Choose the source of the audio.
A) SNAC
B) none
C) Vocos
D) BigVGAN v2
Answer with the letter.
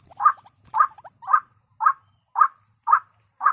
D